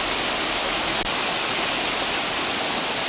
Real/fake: fake